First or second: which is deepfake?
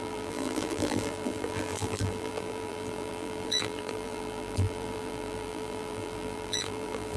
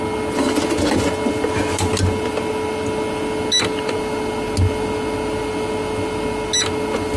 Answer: first